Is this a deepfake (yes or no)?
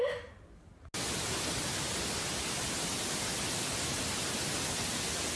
no